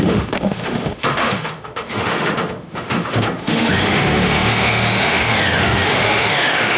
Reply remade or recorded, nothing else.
remade